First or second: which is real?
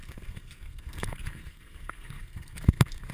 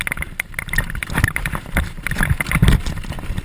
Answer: second